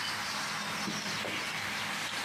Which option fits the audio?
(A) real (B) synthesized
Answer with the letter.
A